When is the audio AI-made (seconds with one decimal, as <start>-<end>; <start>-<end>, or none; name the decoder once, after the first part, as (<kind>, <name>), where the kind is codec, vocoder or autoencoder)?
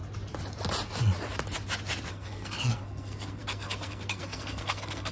2.1-5.1 (codec, SNAC)